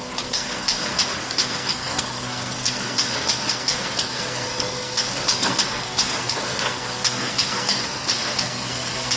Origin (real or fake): fake